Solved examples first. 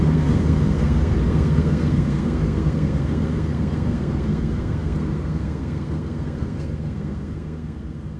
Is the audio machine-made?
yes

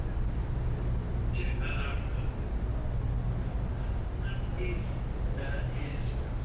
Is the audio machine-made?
no